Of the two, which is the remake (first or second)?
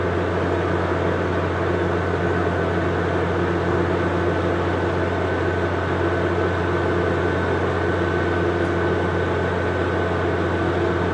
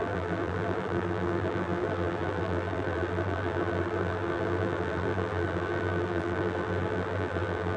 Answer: second